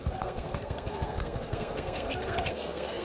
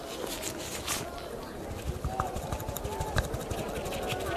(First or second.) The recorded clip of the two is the second